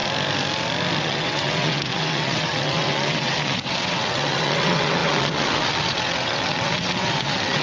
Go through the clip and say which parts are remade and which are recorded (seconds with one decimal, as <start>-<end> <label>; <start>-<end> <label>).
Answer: 0.0-1.0 recorded; 1.0-7.6 remade